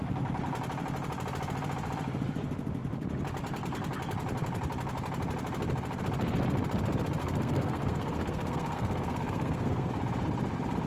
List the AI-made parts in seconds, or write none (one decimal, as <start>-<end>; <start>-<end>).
7.2-9.9